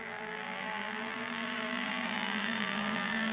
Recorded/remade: remade